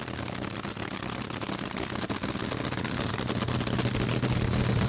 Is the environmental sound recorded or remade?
recorded